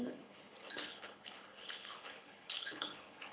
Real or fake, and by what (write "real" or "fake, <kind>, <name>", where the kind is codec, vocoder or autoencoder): fake, codec, HILCodec